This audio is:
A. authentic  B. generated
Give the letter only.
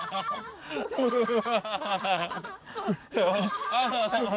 B